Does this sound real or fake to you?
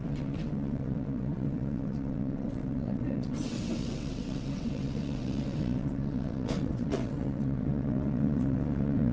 fake